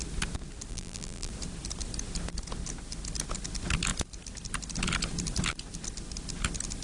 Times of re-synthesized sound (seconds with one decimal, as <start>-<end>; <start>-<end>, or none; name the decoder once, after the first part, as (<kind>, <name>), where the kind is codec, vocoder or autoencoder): 0.7-1.3 (vocoder, BigVGAN v2)